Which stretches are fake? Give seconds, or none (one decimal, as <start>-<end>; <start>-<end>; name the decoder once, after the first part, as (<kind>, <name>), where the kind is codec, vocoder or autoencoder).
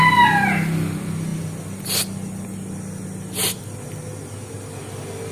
none